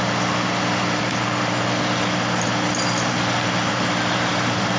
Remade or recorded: recorded